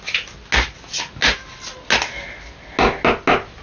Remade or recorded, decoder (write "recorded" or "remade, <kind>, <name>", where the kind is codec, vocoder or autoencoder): recorded